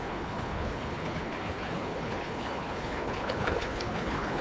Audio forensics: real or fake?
fake